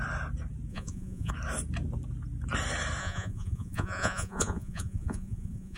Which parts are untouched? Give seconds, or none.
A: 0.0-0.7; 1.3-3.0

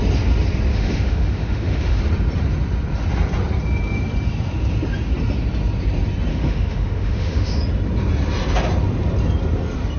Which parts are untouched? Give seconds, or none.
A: 0.0-0.7; 2.0-6.3; 7.6-10.0